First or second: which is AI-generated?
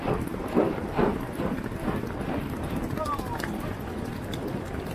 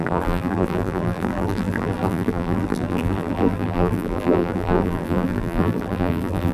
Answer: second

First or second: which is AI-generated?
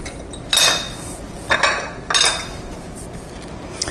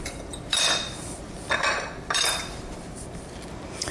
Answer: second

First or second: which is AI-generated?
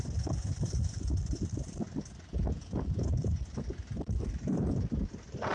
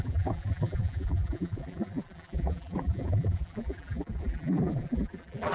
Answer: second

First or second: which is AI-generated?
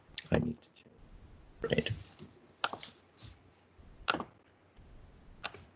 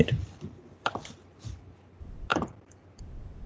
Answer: second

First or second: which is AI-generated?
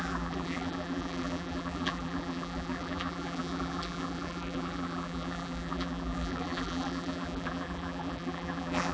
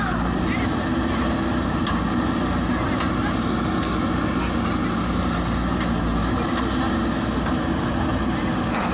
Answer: first